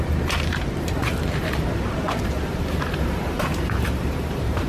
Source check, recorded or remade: remade